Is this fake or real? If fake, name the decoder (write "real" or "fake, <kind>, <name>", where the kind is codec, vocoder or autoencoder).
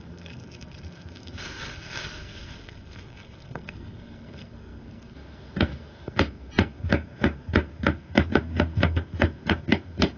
fake, codec, SNAC